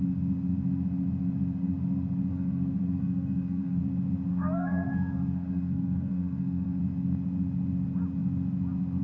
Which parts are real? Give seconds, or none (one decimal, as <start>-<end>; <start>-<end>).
0.0-2.3; 3.8-4.3; 6.8-9.0